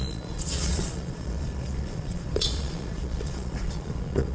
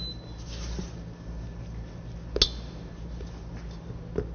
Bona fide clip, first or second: second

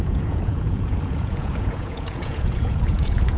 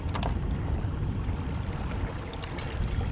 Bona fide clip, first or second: second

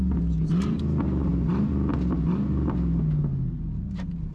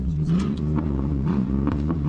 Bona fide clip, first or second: first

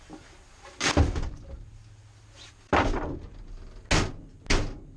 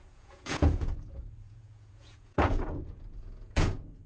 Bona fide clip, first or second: first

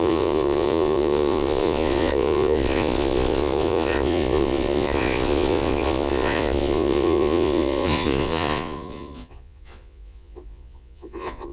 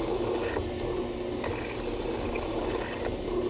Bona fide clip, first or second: second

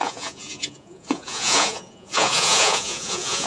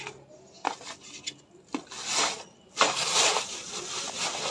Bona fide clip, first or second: second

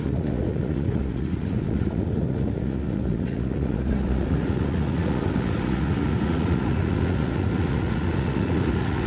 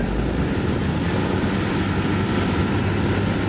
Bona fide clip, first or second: second